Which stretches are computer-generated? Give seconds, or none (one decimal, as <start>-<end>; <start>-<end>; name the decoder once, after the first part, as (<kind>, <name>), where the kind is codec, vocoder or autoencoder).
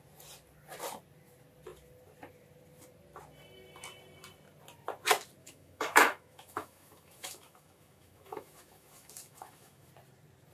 5.4-9.9 (autoencoder, DAC-VAE)